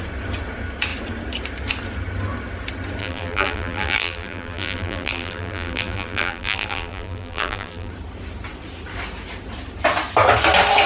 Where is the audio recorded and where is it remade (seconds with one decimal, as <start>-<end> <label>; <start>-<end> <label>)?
0.0-3.0 recorded; 3.0-7.9 remade; 7.9-10.9 recorded